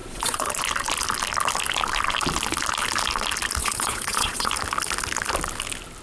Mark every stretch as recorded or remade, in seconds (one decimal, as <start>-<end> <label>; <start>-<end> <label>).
0.0-0.5 remade; 0.5-3.6 recorded; 3.6-4.5 remade; 4.5-6.0 recorded